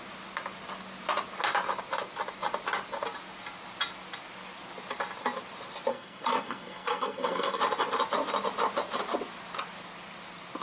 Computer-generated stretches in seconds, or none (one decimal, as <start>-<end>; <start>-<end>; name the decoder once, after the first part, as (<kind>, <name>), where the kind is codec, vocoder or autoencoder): 5.9-7.6 (codec, SNAC)